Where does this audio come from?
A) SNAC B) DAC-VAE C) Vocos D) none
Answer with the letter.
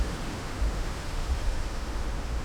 B